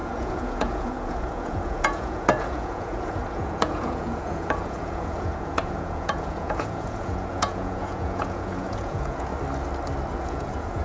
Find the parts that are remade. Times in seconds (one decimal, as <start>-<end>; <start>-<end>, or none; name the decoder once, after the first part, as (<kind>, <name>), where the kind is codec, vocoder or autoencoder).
0.0-9.3 (vocoder, Vocos); 10.2-10.8